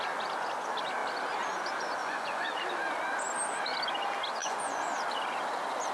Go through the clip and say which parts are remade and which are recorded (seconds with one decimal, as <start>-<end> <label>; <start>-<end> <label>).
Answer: 0.0-2.0 recorded; 2.0-2.5 remade; 2.5-4.4 recorded; 4.4-5.0 remade; 5.0-5.9 recorded